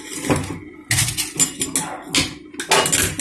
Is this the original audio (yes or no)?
yes